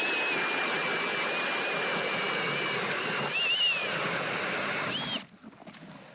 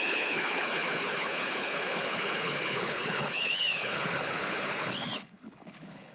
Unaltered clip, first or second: first